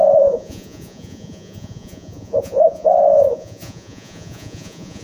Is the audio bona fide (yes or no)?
no